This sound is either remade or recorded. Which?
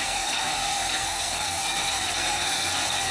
remade